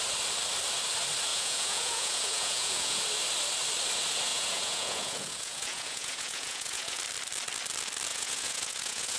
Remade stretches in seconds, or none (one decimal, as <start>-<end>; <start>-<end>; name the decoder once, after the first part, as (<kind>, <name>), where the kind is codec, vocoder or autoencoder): 1.3-3.0 (vocoder, Vocos); 4.3-7.0; 8.1-9.2